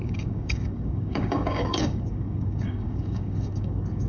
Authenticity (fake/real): fake